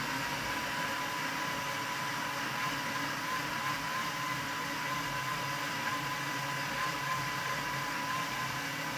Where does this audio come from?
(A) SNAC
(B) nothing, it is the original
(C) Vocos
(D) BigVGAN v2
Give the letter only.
B